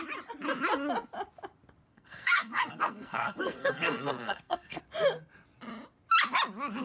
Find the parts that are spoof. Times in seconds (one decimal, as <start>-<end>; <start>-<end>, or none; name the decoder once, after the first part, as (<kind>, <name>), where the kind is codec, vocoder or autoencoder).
1.9-4.8 (codec, SNAC)